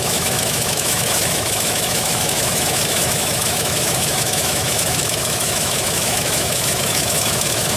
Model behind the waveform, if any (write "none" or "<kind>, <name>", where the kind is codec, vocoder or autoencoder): autoencoder, DAC-VAE